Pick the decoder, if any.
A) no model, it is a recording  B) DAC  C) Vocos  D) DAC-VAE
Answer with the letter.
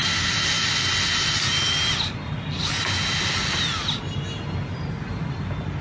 A